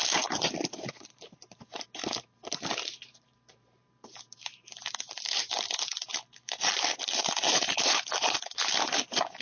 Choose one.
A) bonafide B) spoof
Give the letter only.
B